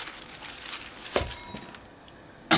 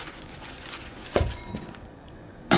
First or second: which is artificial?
second